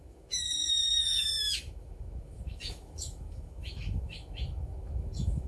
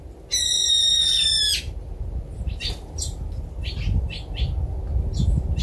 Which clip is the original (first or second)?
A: second